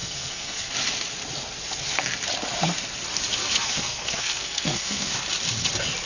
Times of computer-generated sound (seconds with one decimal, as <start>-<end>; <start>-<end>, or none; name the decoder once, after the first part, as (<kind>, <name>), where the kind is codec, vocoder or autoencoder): 0.0-0.7 (codec, SNAC); 3.4-5.1